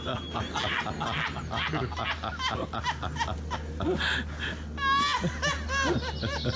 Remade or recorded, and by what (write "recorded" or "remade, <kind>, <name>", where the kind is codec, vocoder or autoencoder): recorded